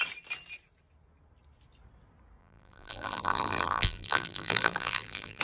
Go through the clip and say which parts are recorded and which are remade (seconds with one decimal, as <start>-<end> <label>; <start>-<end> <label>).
0.0-2.4 recorded; 2.4-5.4 remade